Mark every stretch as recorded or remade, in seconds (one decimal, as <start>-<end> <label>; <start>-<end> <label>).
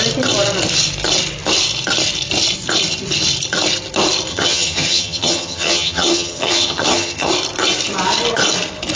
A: 0.0-4.3 recorded; 4.3-7.3 remade; 7.3-9.0 recorded